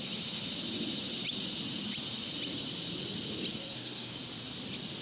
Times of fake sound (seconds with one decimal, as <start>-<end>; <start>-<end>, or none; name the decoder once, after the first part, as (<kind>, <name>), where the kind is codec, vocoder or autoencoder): 3.5-4.2 (codec, SNAC)